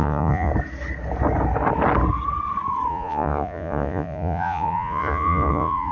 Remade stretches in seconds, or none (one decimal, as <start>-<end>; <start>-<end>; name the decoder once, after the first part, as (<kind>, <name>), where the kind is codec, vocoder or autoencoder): 0.0-0.5 (vocoder, Vocos); 2.9-5.9

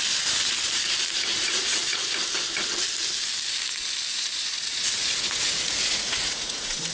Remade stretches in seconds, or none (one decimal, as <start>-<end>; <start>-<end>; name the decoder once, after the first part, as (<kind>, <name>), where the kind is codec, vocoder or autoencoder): 1.3-2.2 (vocoder, Vocos); 4.1-6.9

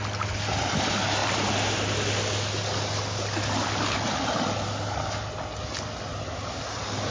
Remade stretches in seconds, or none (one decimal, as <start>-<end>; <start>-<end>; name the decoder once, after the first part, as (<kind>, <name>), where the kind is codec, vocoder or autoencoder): none

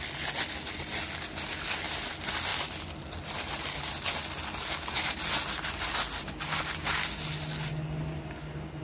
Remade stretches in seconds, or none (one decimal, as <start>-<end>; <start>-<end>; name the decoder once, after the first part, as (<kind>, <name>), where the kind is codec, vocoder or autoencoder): none